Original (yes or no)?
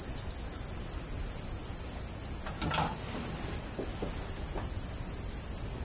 yes